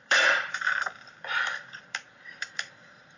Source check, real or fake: fake